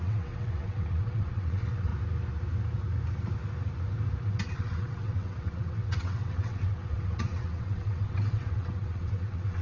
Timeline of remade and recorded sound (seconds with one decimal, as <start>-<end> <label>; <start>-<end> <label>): 0.0-1.9 remade; 1.9-4.3 recorded; 4.3-9.6 remade